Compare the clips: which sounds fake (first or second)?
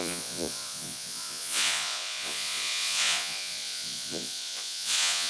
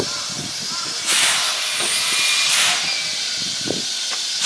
first